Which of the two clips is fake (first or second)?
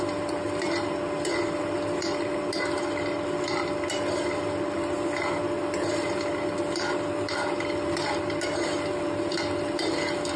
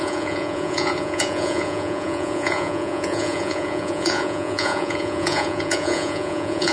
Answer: second